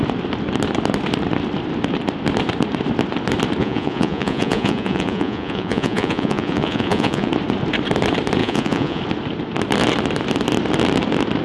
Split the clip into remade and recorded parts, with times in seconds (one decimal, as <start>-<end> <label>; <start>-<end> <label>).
0.0-3.6 recorded; 3.6-7.3 remade; 7.3-8.4 recorded; 8.4-9.0 remade; 9.0-11.4 recorded